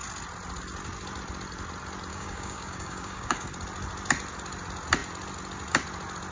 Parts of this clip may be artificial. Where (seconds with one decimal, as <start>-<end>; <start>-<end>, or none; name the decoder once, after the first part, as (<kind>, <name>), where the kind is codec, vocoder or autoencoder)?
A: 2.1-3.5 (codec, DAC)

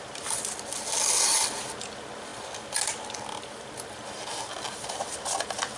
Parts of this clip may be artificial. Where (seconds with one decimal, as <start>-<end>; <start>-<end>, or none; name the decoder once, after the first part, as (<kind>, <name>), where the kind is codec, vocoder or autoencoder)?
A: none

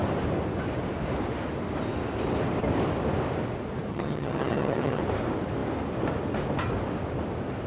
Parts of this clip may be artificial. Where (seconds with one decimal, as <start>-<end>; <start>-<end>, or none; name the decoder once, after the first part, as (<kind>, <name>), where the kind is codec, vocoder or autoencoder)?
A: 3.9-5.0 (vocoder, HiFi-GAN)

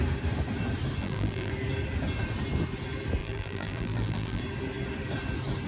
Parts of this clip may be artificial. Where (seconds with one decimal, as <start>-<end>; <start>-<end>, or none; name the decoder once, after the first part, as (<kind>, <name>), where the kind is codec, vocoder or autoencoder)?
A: 1.0-1.5 (vocoder, BigVGAN v2); 3.2-4.4

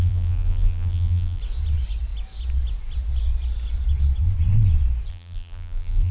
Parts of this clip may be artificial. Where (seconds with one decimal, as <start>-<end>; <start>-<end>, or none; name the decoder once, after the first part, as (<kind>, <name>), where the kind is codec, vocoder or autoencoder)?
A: 0.0-1.4 (vocoder, BigVGAN v2); 5.1-6.1